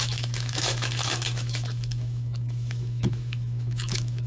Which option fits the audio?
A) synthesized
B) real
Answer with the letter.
A